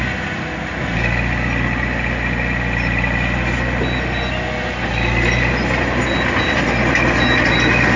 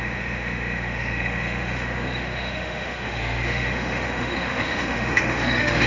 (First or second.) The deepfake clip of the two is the second